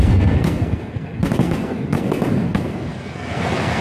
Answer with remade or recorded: remade